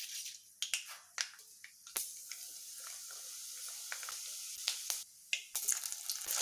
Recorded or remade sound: recorded